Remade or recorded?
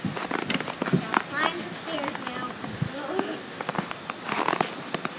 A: recorded